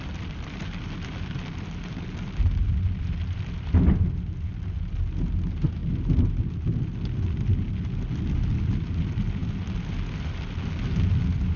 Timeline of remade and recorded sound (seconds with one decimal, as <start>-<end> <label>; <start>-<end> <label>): 0.0-11.6 recorded